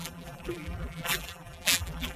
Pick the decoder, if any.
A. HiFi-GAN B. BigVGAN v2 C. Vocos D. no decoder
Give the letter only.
B